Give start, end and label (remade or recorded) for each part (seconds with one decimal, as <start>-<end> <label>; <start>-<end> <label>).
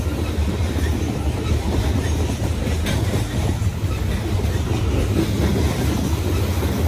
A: 0.0-6.9 recorded